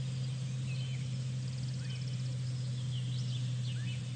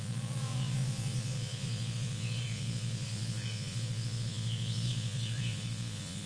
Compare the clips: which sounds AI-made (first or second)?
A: second